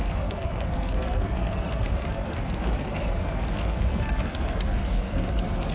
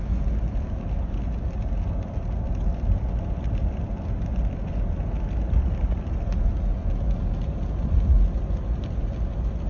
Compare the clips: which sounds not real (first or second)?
first